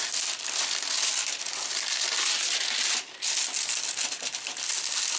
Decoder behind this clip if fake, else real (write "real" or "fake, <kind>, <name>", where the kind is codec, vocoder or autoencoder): real